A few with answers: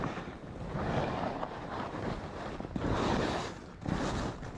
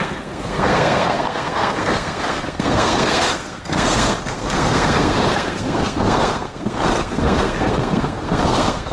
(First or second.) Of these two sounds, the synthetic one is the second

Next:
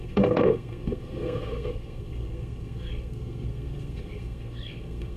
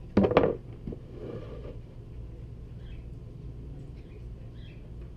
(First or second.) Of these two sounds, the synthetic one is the first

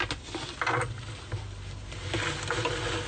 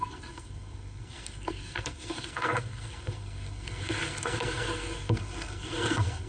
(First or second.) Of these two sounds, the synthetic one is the second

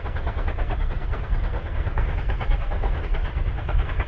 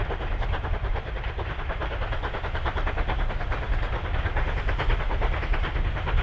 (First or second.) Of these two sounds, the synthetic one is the first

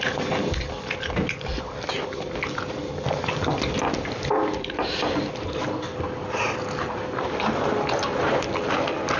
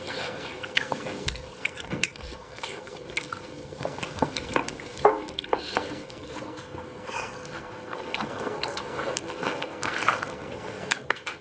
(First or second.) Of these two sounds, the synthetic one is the second